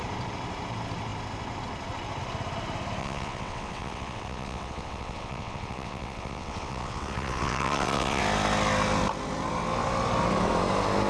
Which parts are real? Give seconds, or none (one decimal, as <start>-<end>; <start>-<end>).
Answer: 0.0-3.0; 8.2-11.1

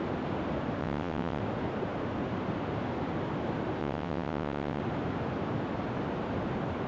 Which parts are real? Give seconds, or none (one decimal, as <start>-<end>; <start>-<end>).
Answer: 0.0-0.8; 1.4-3.8; 4.8-6.9

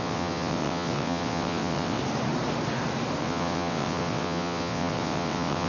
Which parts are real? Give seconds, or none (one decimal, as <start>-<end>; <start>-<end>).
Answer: 2.0-3.2

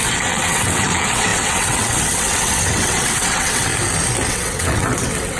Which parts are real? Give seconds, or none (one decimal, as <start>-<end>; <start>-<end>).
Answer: 3.7-4.3